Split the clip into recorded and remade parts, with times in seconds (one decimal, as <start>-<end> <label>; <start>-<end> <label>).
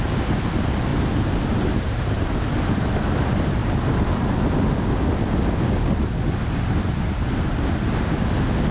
0.0-0.9 recorded; 0.9-2.5 remade; 2.5-3.6 recorded; 3.6-4.2 remade; 4.2-8.7 recorded